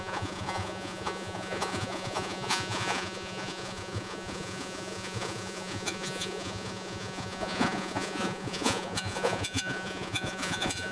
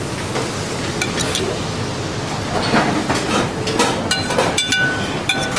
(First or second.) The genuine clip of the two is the second